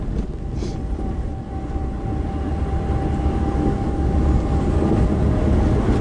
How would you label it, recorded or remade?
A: recorded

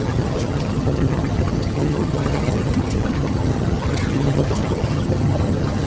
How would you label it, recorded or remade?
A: remade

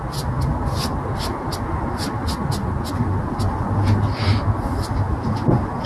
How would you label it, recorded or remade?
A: recorded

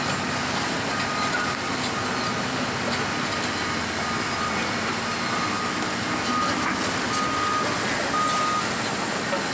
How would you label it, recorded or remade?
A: recorded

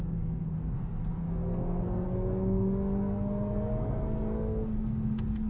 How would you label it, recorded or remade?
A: remade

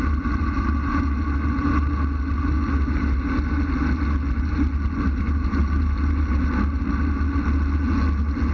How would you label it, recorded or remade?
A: recorded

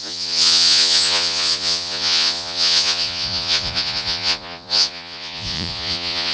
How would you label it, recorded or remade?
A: remade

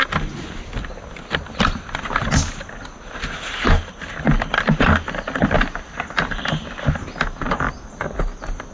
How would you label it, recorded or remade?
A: recorded